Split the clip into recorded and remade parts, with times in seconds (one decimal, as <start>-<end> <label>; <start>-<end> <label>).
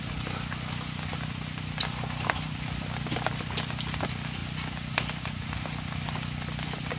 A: 0.0-7.0 recorded